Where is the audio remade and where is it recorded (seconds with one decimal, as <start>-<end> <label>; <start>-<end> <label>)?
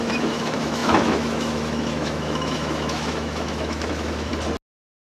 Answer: 0.0-4.3 remade; 4.3-5.1 recorded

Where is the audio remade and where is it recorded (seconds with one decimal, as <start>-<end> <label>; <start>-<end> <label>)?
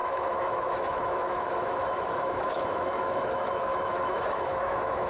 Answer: 0.0-5.1 remade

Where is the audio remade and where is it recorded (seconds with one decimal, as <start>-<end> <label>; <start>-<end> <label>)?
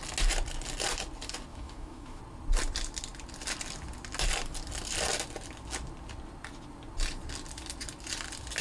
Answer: 0.0-1.5 recorded; 1.5-2.2 remade; 2.2-8.6 recorded